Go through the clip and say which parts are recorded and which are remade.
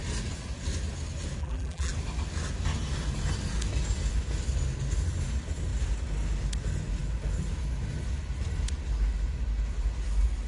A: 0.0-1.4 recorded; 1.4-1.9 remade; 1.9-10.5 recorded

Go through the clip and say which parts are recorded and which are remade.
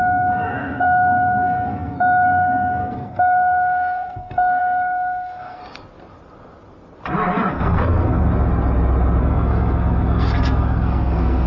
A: 0.0-5.6 remade; 5.6-7.5 recorded; 7.5-8.3 remade; 8.3-9.2 recorded; 9.2-11.5 remade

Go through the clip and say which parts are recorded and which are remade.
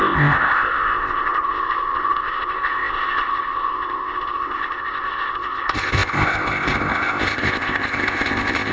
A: 0.0-8.7 remade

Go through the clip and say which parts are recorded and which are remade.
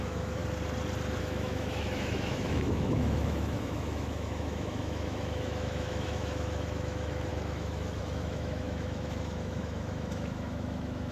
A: 0.0-0.4 remade; 0.4-1.2 recorded; 1.2-11.1 remade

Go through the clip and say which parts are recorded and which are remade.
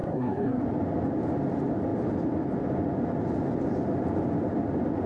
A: 0.0-0.6 remade; 0.6-5.1 recorded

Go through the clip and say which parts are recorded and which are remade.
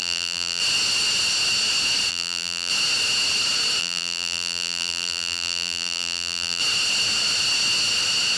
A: 0.0-0.6 remade; 0.6-2.1 recorded; 2.1-2.7 remade; 2.7-3.8 recorded; 3.8-6.6 remade; 6.6-8.4 recorded